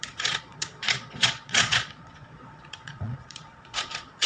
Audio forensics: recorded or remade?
remade